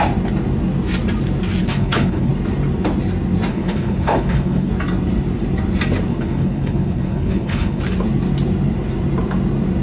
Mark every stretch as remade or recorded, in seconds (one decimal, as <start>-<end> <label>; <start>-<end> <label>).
0.0-1.6 recorded; 1.6-2.3 remade; 2.3-3.5 recorded; 3.5-4.7 remade; 4.7-6.1 recorded; 6.1-7.8 remade; 7.8-9.8 recorded